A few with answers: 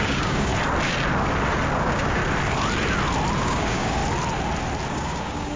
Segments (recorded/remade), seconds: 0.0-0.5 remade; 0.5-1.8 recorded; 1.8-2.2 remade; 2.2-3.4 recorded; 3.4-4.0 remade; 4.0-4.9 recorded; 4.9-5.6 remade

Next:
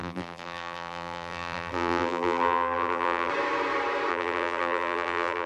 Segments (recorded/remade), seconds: 0.0-3.3 remade; 3.3-4.1 recorded; 4.1-5.5 remade

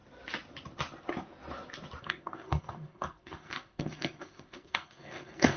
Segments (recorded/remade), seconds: 0.0-2.0 recorded; 2.0-5.6 remade

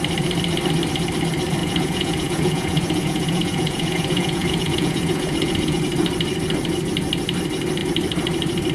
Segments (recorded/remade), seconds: 0.0-1.6 recorded; 1.6-5.8 remade; 5.8-8.7 recorded

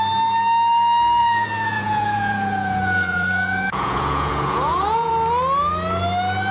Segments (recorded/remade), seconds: 0.0-1.2 recorded; 1.2-5.1 remade; 5.1-6.5 recorded